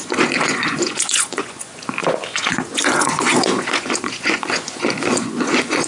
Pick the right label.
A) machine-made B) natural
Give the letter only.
A